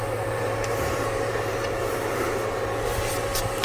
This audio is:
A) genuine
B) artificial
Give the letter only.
B